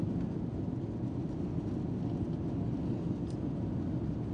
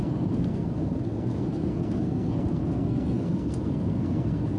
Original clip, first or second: first